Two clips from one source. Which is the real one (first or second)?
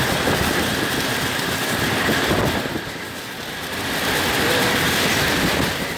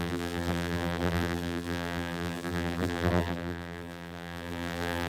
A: first